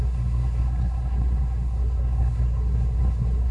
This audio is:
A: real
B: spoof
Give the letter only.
B